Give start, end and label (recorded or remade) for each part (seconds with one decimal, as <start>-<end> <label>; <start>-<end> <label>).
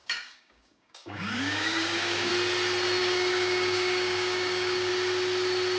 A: 0.0-2.3 remade; 2.3-3.0 recorded; 3.0-4.9 remade; 4.9-5.8 recorded